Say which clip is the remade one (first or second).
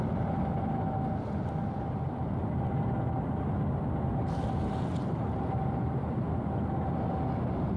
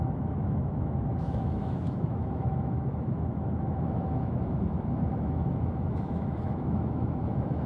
second